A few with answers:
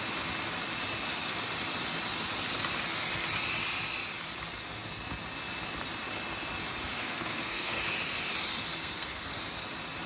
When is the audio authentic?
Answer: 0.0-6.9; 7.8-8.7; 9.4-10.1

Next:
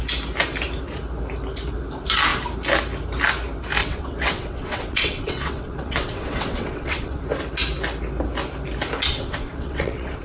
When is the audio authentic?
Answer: 0.0-3.8; 7.2-9.1